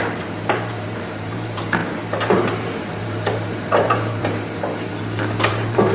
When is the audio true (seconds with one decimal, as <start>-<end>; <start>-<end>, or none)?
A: 4.9-5.5